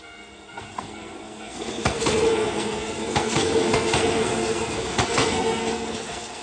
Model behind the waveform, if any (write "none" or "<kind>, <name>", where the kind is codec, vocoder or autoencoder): codec, SNAC